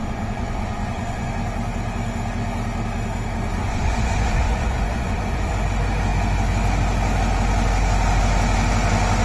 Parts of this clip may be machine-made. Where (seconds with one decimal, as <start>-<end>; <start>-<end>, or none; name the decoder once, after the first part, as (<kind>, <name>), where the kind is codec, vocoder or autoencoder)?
0.0-1.3 (vocoder, Vocos); 3.6-5.5